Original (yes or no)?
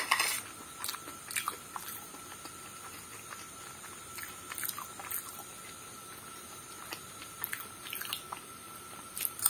yes